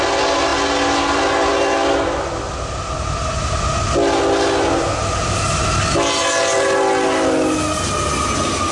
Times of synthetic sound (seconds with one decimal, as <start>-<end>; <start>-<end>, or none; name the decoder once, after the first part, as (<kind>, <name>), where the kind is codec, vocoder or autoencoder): none